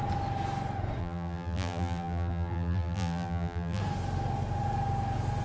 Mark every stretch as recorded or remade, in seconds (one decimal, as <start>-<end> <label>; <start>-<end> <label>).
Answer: 0.0-1.0 recorded; 1.0-3.8 remade; 3.8-5.4 recorded